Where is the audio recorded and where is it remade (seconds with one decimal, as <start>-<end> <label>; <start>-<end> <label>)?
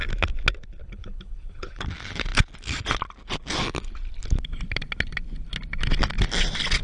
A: 0.0-0.8 recorded; 0.8-1.8 remade; 1.8-6.8 recorded